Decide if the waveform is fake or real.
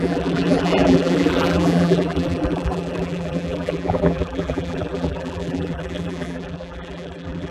fake